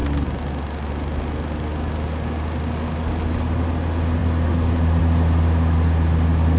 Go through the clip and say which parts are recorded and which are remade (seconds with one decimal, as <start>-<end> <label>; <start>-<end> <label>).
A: 0.0-6.6 recorded